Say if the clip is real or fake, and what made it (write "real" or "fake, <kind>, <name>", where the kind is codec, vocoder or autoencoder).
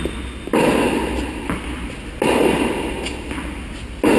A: real